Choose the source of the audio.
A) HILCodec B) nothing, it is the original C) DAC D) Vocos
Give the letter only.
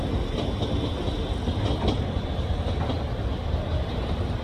B